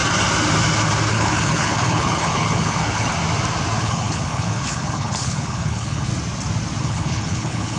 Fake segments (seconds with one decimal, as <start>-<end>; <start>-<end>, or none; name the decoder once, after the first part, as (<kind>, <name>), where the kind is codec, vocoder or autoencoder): 1.1-3.1 (codec, HILCodec); 3.8-6.1; 6.8-7.8